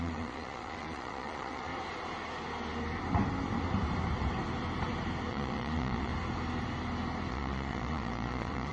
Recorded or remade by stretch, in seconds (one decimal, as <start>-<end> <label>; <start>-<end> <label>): 0.0-1.7 remade; 1.7-5.3 recorded; 5.3-6.1 remade; 6.1-7.3 recorded; 7.3-8.7 remade